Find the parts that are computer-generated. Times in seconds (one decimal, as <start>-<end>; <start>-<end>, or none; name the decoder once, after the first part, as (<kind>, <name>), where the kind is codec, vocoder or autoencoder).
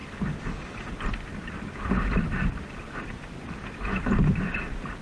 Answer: none